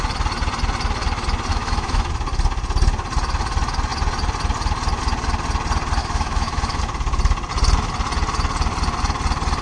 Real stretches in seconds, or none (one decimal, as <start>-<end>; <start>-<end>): 0.0-1.5; 2.1-6.0; 6.8-9.6